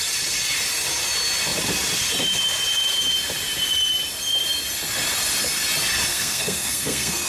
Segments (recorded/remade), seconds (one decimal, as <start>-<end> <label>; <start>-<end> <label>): 0.0-6.1 recorded; 6.1-7.3 remade